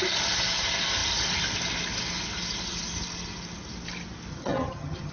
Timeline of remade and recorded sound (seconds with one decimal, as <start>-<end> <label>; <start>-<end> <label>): 0.0-4.3 recorded; 4.3-5.1 remade